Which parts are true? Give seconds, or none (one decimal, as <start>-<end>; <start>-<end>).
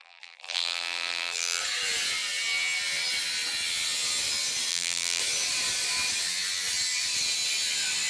1.6-4.7; 5.2-8.1